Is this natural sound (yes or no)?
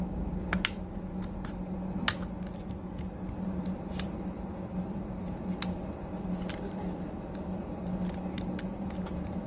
yes